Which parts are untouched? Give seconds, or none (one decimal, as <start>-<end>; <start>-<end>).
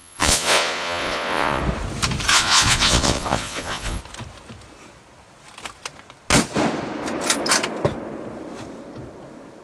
1.6-2.3; 4.0-9.6